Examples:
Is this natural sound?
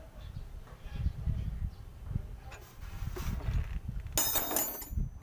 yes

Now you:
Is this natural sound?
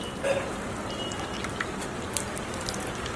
yes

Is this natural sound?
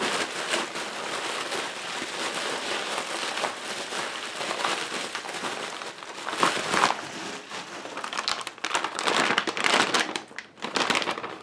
no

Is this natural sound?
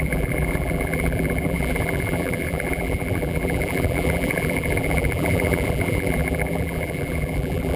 no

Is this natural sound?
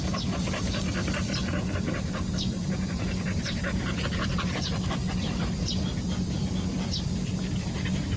no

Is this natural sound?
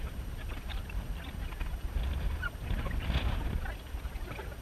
yes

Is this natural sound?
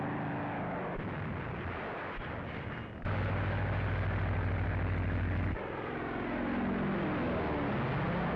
yes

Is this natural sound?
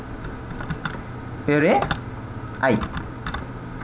yes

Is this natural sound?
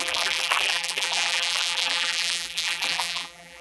no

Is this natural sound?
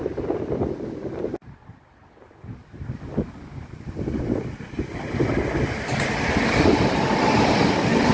yes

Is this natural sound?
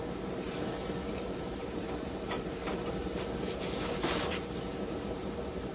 no